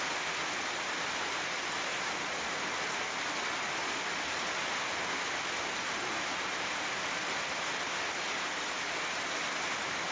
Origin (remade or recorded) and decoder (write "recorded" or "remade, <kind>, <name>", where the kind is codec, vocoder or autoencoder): recorded